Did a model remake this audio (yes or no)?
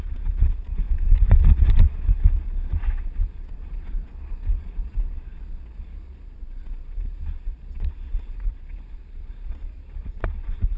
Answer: yes